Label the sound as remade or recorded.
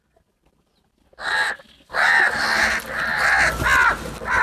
recorded